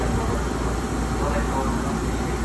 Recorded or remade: recorded